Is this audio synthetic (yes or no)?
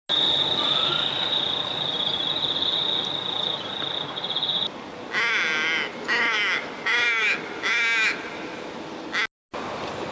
no